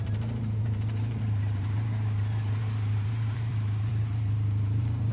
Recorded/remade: remade